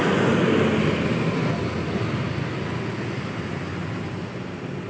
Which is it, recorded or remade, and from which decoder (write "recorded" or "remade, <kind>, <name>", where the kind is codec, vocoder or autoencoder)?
recorded